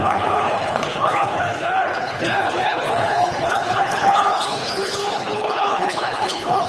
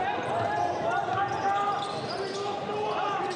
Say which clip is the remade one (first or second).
first